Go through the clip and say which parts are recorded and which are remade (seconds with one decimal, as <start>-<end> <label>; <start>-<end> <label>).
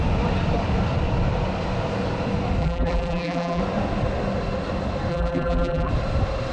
0.0-2.6 recorded; 2.6-3.6 remade; 3.6-5.1 recorded; 5.1-5.9 remade; 5.9-6.5 recorded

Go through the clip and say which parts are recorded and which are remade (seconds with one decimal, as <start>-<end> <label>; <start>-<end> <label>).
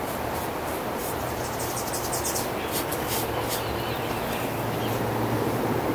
0.0-1.0 recorded; 1.0-1.9 remade; 1.9-5.9 recorded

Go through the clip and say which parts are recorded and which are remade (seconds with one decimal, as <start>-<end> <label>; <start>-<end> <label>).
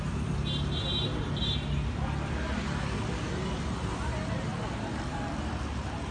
0.0-4.5 recorded; 4.5-6.1 remade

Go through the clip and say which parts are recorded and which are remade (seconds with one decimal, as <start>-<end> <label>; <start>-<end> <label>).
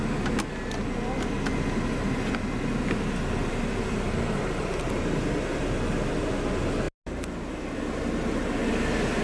0.0-3.4 recorded; 3.4-4.4 remade; 4.4-5.5 recorded; 5.5-6.1 remade; 6.1-9.2 recorded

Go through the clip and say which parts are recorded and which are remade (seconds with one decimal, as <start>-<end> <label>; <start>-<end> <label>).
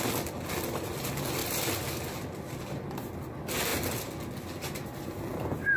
0.0-5.8 recorded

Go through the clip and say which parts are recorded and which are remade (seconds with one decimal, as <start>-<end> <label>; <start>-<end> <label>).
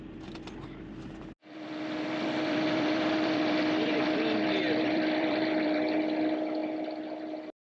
0.0-1.4 recorded; 1.4-6.0 remade; 6.0-7.7 recorded